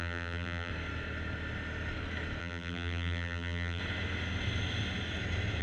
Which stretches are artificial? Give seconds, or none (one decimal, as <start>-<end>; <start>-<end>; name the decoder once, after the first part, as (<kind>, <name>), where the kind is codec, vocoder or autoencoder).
0.0-0.7 (vocoder, BigVGAN v2); 2.4-3.8